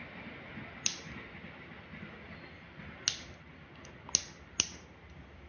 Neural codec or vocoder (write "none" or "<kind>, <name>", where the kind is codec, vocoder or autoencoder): none